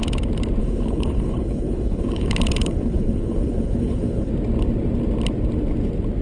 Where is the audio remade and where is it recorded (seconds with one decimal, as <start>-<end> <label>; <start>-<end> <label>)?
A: 0.0-0.6 recorded; 0.6-4.3 remade; 4.3-6.2 recorded